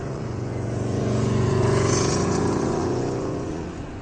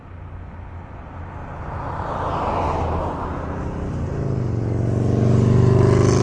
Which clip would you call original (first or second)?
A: second